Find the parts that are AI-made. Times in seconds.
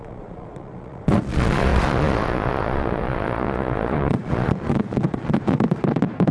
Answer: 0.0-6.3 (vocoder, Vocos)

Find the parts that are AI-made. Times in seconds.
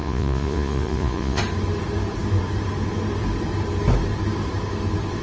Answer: 0.0-1.4 (vocoder, Vocos)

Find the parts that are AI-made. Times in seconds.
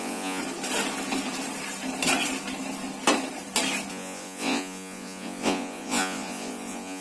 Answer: 0.0-0.4 (vocoder, Vocos); 3.9-7.0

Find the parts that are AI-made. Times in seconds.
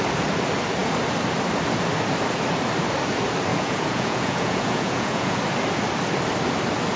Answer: 3.5-5.4 (vocoder, Vocos)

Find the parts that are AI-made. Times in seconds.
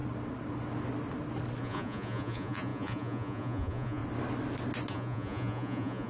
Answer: 1.6-4.0 (vocoder, Vocos); 4.9-6.1